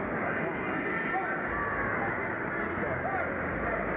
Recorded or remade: recorded